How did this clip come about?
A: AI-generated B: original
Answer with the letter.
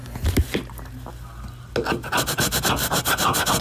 B